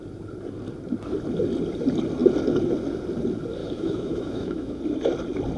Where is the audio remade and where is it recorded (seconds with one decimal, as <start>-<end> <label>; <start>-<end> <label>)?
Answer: 0.0-3.6 recorded; 3.6-4.8 remade; 4.8-5.6 recorded